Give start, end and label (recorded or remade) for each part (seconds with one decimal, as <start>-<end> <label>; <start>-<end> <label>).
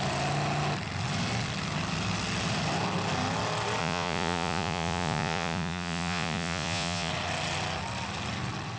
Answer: 0.0-3.8 recorded; 3.8-7.1 remade; 7.1-8.8 recorded